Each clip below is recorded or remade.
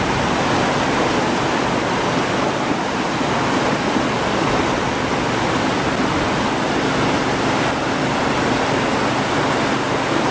recorded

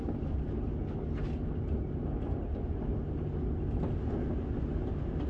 recorded